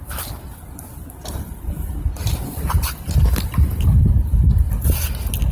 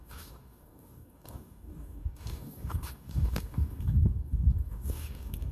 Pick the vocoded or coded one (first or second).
second